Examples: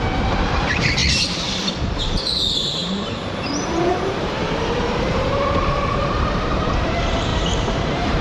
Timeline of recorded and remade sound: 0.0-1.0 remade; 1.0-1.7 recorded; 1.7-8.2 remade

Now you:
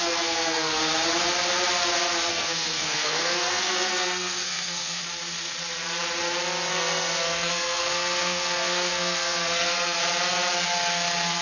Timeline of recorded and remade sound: 0.0-0.8 remade; 0.8-2.3 recorded; 2.3-5.0 remade; 5.0-6.7 recorded; 6.7-10.0 remade; 10.0-11.4 recorded

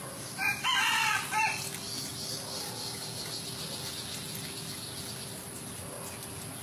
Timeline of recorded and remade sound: 0.0-6.6 recorded

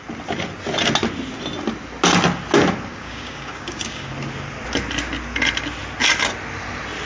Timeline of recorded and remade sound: 0.0-2.9 recorded; 2.9-4.1 remade; 4.1-7.1 recorded

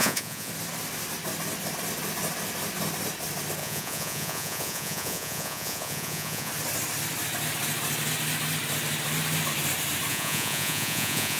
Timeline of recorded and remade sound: 0.0-0.5 remade; 0.5-3.6 recorded; 3.6-6.5 remade; 6.5-10.1 recorded; 10.1-11.4 remade